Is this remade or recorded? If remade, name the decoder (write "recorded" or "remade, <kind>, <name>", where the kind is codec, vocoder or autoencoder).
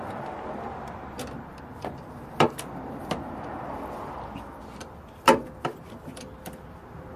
remade, vocoder, BigVGAN v2